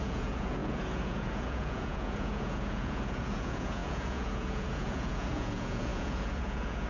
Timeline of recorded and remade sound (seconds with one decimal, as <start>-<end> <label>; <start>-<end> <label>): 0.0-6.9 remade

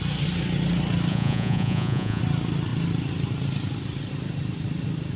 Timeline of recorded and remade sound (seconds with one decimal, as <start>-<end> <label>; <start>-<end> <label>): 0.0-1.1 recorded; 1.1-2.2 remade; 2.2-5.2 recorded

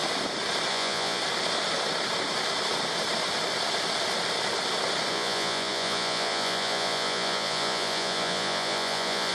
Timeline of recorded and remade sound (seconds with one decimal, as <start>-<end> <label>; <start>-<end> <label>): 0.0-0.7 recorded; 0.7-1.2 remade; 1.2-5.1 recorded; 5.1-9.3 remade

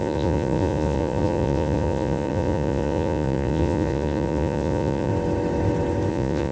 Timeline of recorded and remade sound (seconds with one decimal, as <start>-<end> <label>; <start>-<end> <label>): 0.0-5.1 remade; 5.1-6.1 recorded; 6.1-6.5 remade